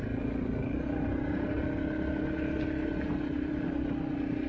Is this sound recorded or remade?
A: recorded